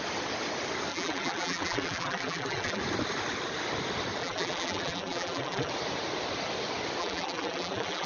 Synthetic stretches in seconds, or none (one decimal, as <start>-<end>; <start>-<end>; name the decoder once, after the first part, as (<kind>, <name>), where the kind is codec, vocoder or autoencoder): 0.9-2.8 (vocoder, BigVGAN v2); 4.2-5.7; 7.0-8.1